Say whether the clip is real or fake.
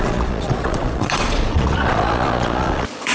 fake